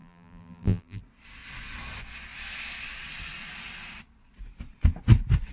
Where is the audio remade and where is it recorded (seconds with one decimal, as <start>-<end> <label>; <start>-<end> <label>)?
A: 0.0-1.0 remade; 1.0-5.5 recorded